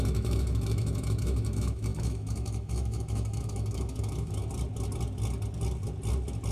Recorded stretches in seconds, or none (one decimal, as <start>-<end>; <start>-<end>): 4.4-6.5